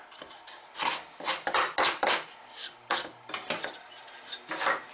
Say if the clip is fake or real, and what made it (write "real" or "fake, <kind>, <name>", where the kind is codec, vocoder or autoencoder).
real